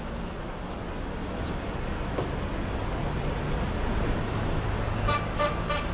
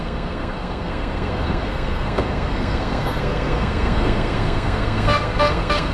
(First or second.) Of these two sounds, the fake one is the second